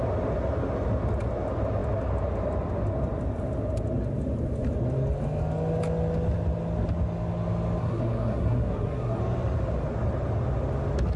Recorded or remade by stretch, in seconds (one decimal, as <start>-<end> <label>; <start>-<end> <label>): 0.0-7.8 recorded; 7.8-9.2 remade; 9.2-11.2 recorded